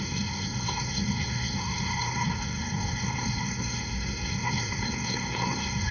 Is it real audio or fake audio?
fake